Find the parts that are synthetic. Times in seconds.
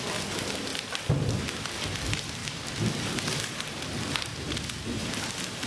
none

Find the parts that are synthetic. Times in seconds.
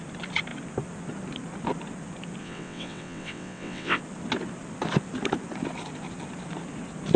2.4-4.0 (vocoder, WaveNeXt)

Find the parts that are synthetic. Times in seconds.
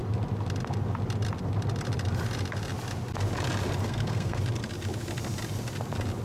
3.8-4.4 (codec, SNAC)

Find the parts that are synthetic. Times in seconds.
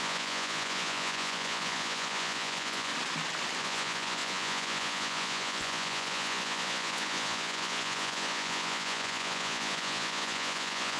0.0-2.9 (vocoder, Vocos); 3.6-11.0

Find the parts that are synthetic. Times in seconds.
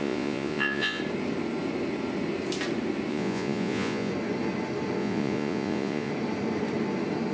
0.0-1.0 (vocoder, Vocos); 3.1-4.1; 5.0-6.1